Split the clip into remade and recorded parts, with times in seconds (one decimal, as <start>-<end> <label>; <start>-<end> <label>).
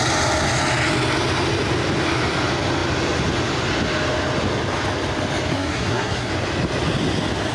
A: 0.0-5.5 recorded; 5.5-6.3 remade; 6.3-7.5 recorded